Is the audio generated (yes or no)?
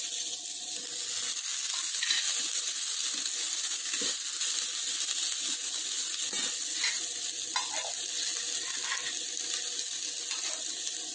no